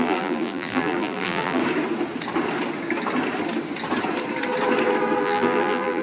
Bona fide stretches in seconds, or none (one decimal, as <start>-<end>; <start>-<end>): 1.6-5.2